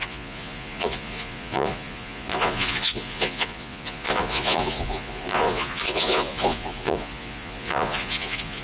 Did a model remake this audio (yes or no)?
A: yes